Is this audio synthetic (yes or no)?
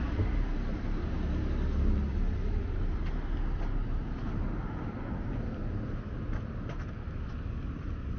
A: no